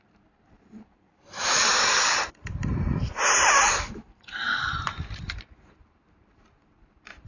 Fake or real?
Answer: fake